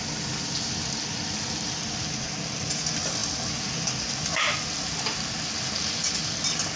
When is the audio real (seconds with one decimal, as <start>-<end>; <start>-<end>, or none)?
0.0-6.8